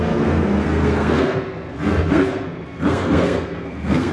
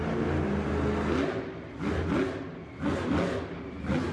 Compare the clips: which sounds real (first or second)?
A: second